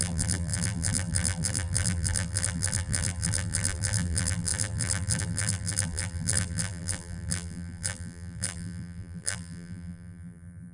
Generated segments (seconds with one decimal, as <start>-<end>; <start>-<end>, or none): 0.0-10.7